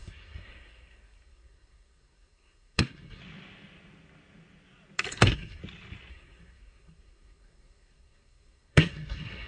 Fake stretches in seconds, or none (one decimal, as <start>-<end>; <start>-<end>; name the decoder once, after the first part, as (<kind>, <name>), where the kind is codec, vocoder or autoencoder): 0.0-3.2 (codec, SNAC); 5.1-5.6; 6.1-9.5